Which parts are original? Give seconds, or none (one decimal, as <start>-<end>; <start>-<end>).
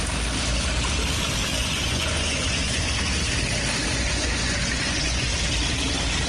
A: 0.0-1.5; 2.9-3.9; 5.3-6.3